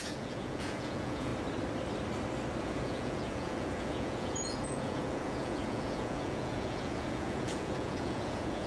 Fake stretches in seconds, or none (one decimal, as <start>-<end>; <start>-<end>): 0.0-1.3; 2.6-8.7